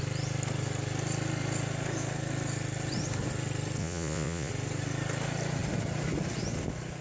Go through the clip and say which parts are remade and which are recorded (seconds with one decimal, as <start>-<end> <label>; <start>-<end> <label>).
0.0-3.8 recorded; 3.8-4.5 remade; 4.5-7.0 recorded